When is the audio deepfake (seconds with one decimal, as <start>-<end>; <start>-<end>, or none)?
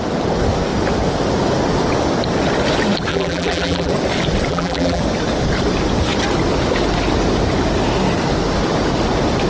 3.1-3.9; 4.5-5.0